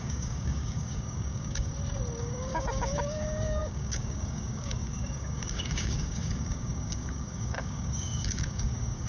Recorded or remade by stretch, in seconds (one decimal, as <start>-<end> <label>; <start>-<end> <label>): 0.0-1.7 remade; 1.7-2.2 recorded; 2.2-9.1 remade